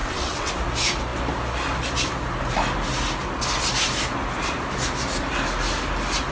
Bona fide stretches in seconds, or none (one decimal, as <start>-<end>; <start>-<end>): 0.5-6.3